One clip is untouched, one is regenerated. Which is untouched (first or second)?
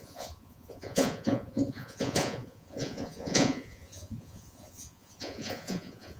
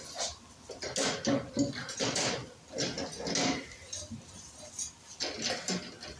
second